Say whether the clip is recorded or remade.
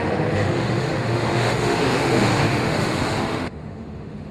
remade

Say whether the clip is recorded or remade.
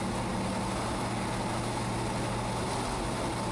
recorded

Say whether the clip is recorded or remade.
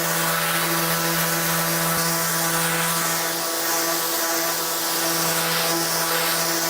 recorded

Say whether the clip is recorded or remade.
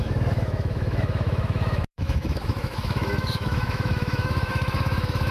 remade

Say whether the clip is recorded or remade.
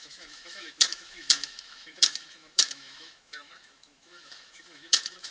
remade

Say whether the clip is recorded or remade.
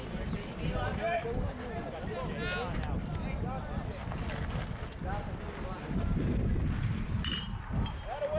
recorded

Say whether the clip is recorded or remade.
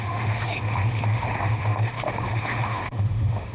remade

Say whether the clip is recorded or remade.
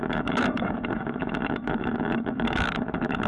remade